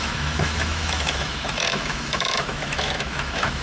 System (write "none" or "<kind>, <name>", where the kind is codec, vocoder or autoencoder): autoencoder, DAC-VAE